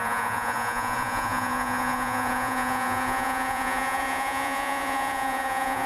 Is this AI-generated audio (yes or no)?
yes